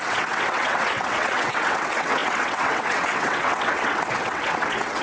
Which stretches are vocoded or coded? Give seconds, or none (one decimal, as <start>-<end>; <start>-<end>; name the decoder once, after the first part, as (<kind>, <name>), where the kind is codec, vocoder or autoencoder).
0.0-5.0 (vocoder, WaveNeXt)